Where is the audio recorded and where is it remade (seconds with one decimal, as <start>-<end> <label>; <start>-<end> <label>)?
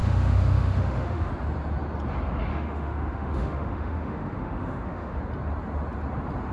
0.0-1.3 remade; 1.3-2.5 recorded; 2.5-5.2 remade; 5.2-6.5 recorded